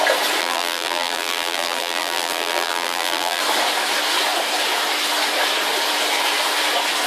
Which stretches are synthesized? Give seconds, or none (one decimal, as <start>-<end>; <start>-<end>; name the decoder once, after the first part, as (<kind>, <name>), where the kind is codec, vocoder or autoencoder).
0.4-3.4 (vocoder, BigVGAN v2)